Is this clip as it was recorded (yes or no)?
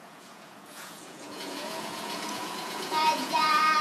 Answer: no